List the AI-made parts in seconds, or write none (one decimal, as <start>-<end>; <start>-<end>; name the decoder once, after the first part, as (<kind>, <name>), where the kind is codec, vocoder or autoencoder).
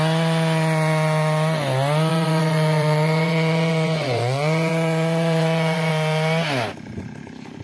2.1-5.9 (vocoder, Vocos)